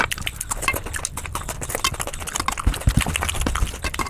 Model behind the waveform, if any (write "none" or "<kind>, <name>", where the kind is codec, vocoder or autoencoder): none